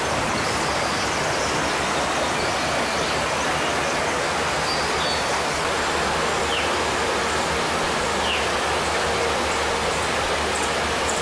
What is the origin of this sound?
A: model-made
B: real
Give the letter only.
B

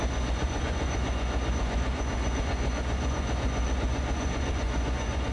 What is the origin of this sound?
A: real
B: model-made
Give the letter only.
B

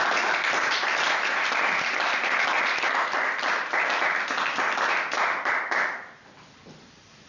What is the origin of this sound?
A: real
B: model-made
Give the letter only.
A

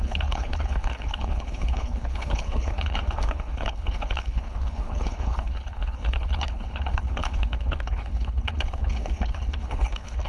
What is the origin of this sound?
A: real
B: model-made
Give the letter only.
B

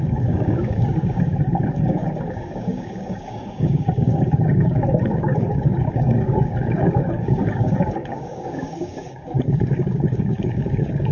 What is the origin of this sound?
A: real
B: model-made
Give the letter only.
B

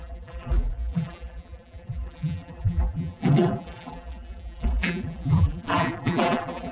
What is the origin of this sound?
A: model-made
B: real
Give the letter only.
A